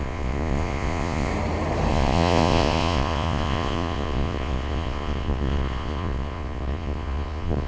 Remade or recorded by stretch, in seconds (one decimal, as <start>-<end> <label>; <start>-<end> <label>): 0.0-1.3 remade; 1.3-1.9 recorded; 1.9-7.7 remade